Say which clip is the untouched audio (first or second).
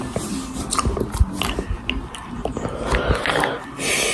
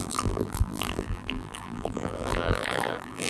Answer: first